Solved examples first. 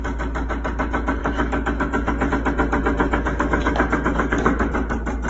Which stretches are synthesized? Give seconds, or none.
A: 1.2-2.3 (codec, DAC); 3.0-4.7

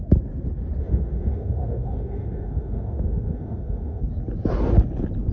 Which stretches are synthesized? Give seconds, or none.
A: 0.8-4.0 (autoencoder, DAC-VAE)

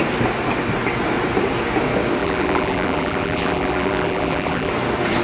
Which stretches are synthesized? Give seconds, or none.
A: 2.2-4.7 (vocoder, BigVGAN v2)

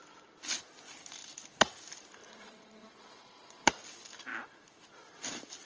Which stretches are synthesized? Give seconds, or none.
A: 2.2-3.7 (vocoder, Vocos)

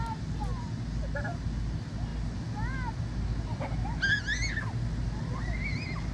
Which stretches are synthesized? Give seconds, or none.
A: none